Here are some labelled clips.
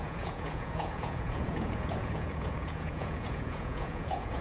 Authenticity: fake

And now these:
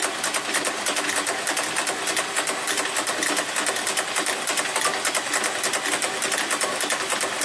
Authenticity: real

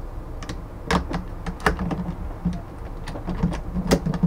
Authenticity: real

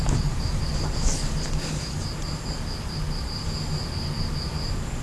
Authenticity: real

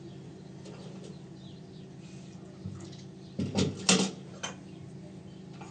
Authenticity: real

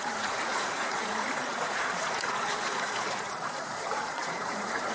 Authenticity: fake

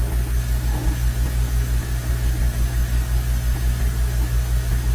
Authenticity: real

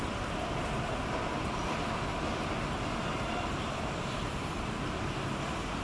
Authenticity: real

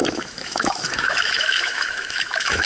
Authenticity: fake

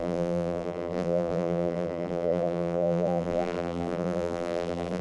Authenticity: fake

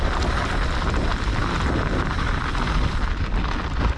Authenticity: real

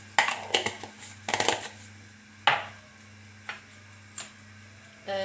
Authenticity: real